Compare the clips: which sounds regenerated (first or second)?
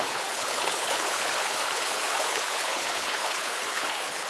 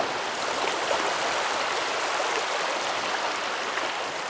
first